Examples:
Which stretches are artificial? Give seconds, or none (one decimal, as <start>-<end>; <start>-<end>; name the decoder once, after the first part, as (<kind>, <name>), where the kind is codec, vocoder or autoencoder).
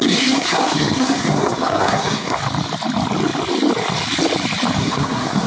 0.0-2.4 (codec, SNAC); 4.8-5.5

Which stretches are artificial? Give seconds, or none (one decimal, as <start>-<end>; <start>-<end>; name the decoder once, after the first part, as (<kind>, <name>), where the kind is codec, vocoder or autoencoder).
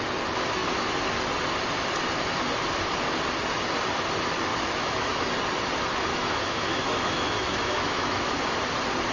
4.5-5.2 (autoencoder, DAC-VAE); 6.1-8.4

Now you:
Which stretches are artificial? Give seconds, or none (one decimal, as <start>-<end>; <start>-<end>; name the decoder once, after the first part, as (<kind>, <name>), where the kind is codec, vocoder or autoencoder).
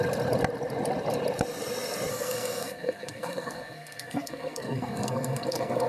2.1-5.9 (codec, SNAC)